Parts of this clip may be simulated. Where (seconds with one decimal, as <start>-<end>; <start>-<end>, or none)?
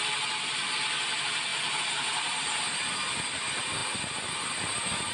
none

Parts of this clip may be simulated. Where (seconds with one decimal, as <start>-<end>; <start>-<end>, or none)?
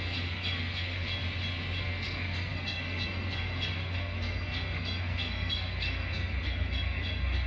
0.0-1.1; 1.8-7.5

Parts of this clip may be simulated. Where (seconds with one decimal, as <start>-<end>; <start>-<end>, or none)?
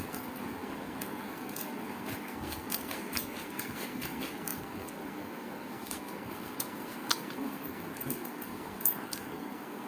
0.0-9.9